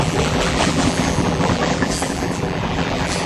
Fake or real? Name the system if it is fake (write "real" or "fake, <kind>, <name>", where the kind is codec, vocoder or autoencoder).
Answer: fake, vocoder, BigVGAN v2